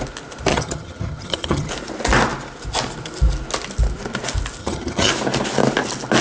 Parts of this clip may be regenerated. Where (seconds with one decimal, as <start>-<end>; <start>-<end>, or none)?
0.5-1.7; 4.6-5.1